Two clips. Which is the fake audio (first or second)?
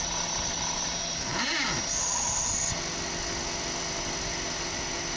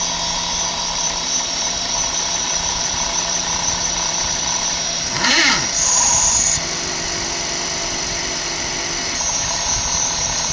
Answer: second